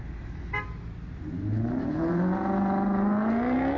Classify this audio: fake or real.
real